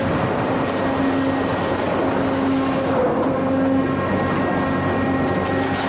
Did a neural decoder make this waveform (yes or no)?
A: no